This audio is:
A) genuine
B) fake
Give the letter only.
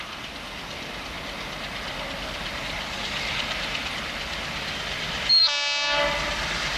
A